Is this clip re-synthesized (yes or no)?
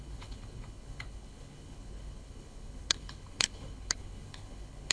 yes